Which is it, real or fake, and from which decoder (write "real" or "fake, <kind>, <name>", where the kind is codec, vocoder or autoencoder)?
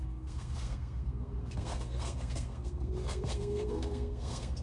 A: fake, codec, SNAC